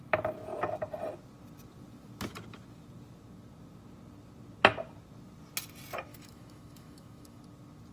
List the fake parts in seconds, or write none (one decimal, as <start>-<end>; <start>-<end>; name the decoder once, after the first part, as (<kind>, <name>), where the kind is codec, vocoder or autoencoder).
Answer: 6.1-7.4 (autoencoder, DAC-VAE)